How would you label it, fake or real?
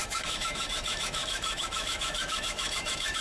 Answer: fake